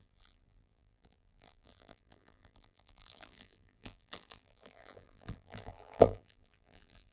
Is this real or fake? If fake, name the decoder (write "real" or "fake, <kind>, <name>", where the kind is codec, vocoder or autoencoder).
fake, vocoder, BigVGAN v2